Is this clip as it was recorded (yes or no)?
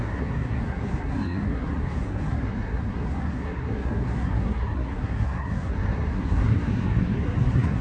no